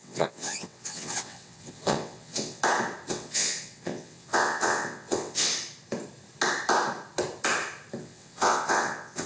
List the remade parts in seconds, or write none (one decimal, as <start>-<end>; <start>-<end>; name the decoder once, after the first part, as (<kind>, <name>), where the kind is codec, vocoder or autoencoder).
0.0-2.6 (vocoder, WaveNeXt); 3.1-5.5; 8.0-9.3